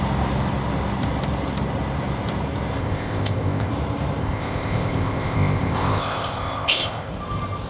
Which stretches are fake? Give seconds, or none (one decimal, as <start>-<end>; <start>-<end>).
2.8-3.7; 4.2-7.1